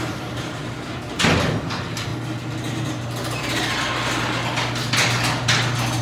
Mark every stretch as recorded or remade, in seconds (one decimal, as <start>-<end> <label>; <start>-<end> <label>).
0.0-0.6 remade; 0.6-1.6 recorded; 1.6-2.1 remade; 2.1-6.0 recorded